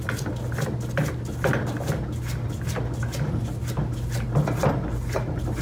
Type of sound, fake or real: real